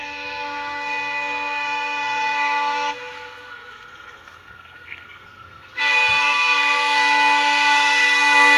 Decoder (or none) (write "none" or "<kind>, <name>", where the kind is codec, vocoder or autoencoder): codec, SNAC